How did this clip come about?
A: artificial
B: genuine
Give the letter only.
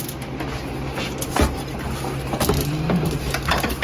B